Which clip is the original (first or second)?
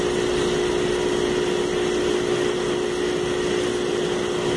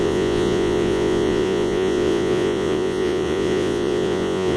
first